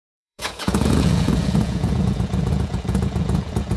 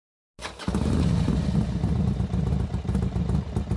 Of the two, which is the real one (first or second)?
second